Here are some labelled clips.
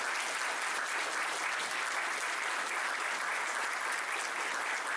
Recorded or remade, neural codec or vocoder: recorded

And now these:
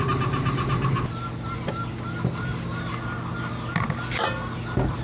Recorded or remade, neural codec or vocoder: recorded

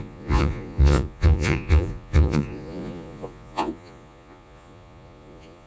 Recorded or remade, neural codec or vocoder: remade, vocoder, Vocos